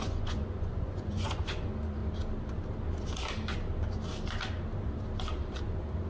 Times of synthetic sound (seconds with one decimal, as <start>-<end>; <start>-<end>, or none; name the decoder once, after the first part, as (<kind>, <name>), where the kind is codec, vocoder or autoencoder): 0.0-2.0 (vocoder, Vocos)